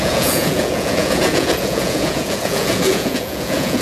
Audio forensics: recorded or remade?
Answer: remade